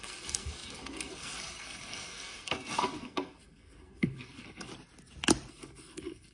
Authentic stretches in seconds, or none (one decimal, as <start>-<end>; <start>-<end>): 4.7-5.5